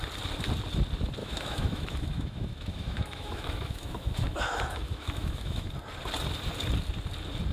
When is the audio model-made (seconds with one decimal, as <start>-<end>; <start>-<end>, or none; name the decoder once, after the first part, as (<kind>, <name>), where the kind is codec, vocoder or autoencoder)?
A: 1.2-5.7 (autoencoder, DAC-VAE)